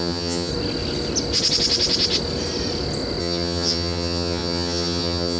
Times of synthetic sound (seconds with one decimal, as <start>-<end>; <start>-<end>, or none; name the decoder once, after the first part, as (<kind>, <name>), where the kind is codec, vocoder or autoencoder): 0.0-0.5 (vocoder, HiFi-GAN); 3.2-5.4